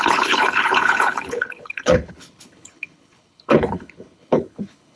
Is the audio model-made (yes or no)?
yes